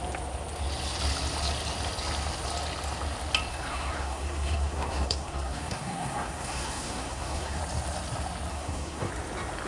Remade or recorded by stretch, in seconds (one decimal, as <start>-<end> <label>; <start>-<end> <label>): 0.0-3.5 recorded; 3.5-7.6 remade; 7.6-8.5 recorded; 8.5-9.1 remade; 9.1-9.7 recorded